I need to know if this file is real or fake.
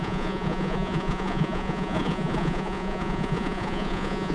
fake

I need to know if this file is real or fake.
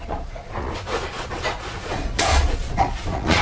fake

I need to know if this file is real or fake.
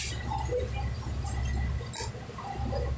real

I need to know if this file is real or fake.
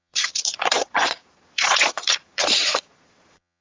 fake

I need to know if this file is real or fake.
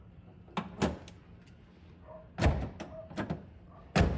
real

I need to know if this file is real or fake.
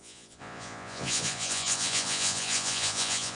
fake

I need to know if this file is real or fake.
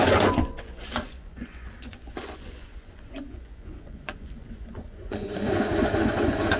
fake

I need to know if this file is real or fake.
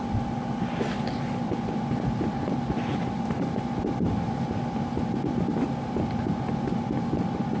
real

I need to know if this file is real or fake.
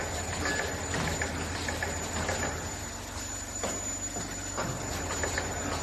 real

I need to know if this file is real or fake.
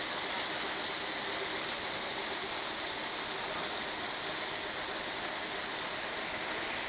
real